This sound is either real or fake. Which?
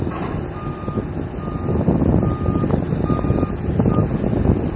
real